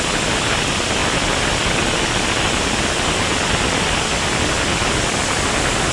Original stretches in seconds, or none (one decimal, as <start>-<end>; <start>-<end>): 0.0-5.9